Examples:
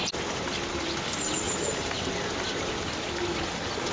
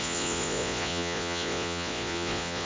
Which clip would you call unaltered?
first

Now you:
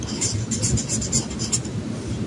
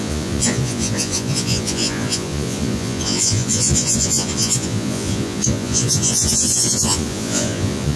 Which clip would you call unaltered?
first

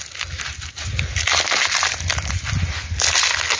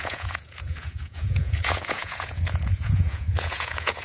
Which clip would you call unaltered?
first